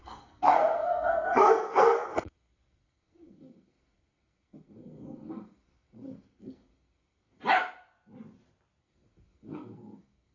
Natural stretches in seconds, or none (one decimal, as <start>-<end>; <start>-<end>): 7.4-8.8